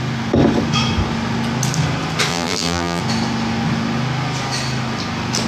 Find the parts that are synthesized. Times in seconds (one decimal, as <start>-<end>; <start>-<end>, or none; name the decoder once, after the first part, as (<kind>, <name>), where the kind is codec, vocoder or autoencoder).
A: 2.3-3.0 (vocoder, BigVGAN v2)